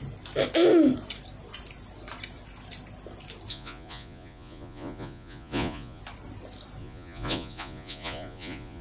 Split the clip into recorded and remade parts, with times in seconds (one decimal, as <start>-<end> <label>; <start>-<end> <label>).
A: 0.0-3.5 recorded; 3.5-6.0 remade; 6.0-6.8 recorded; 6.8-8.8 remade